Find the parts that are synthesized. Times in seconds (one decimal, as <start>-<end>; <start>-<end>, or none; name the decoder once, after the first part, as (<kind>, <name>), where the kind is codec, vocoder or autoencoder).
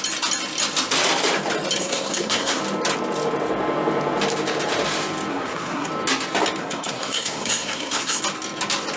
1.8-2.6 (codec, SNAC); 5.3-5.9; 6.6-8.2